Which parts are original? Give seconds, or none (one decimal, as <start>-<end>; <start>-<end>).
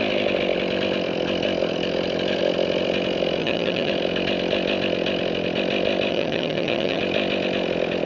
0.0-3.4; 3.9-6.1; 7.0-8.1